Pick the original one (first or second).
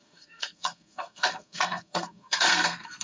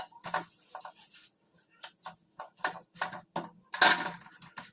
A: second